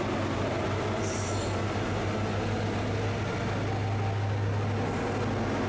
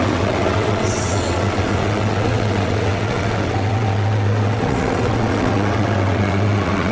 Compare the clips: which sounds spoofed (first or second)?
second